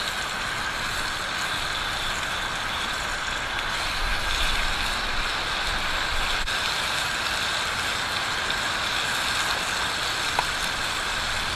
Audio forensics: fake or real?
real